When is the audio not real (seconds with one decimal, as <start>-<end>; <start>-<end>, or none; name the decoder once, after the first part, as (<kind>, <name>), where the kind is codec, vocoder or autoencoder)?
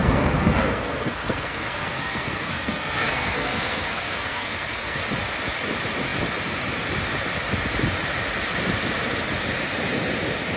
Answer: 0.0-5.1 (codec, SNAC)